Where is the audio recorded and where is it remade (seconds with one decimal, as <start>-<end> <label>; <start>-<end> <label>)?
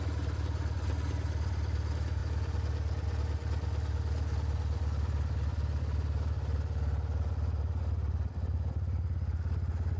0.0-10.0 recorded